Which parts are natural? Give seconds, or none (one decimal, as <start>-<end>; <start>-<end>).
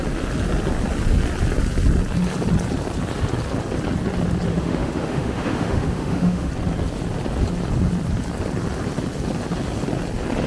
0.0-4.5; 6.5-10.5